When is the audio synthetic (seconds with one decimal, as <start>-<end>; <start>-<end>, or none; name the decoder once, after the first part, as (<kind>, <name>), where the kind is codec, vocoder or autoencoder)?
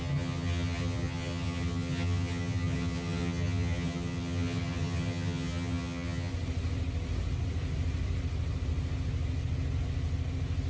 0.0-6.3 (vocoder, HiFi-GAN)